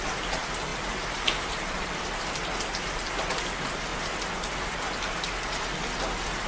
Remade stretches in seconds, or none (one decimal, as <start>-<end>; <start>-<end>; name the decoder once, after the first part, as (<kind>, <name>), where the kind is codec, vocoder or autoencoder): 0.7-2.3 (vocoder, BigVGAN v2)